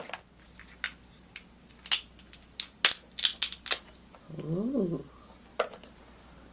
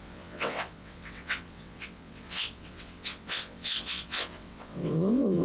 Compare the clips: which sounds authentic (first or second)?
first